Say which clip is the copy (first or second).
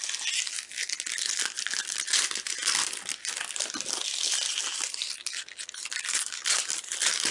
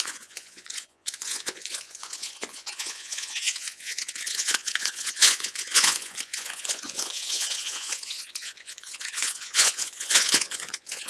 second